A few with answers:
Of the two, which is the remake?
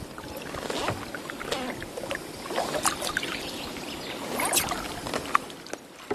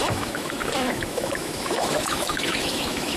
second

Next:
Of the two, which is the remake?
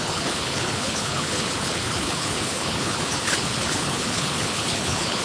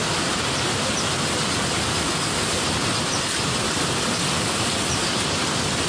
first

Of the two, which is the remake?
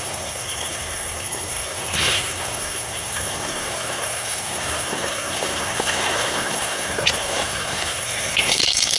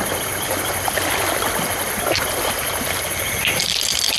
first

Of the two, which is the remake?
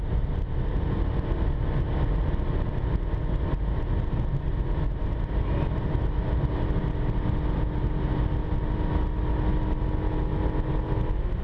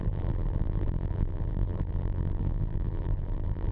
second